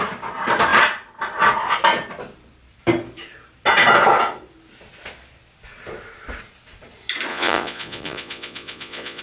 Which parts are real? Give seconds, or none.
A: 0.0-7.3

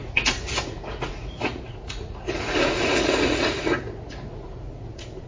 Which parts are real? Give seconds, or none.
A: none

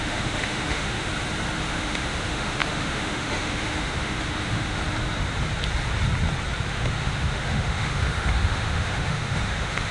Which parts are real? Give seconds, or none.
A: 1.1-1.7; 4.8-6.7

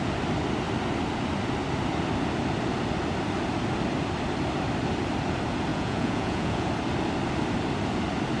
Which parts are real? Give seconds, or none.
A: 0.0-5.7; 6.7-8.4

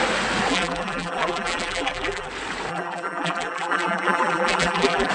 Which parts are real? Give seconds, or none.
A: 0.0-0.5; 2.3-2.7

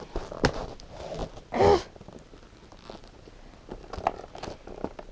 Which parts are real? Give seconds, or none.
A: 0.0-5.1

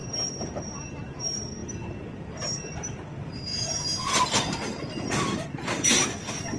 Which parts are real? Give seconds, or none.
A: none